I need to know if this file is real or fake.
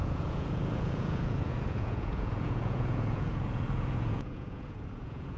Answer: fake